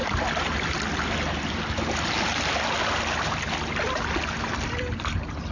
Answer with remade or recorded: recorded